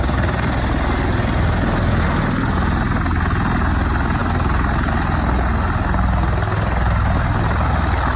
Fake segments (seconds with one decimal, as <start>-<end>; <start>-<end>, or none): none